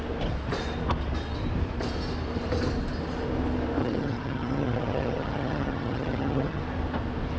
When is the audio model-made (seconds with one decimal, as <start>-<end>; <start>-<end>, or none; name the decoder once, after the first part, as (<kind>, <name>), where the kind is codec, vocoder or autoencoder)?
3.8-6.6 (vocoder, HiFi-GAN)